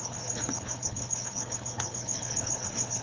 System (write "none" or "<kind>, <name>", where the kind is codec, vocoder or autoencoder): codec, HILCodec